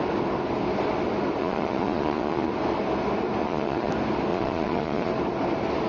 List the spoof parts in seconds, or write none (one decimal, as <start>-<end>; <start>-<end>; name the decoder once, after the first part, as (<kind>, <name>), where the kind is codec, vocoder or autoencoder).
1.4-2.5 (vocoder, Vocos); 3.4-3.9; 4.3-5.1